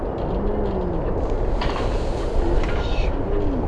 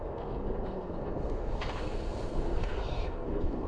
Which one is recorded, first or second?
first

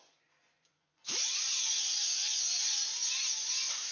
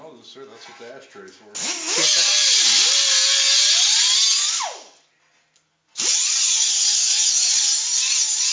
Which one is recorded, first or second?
second